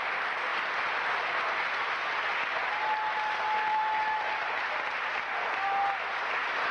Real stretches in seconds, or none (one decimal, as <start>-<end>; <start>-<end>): 0.0-3.7; 4.3-6.7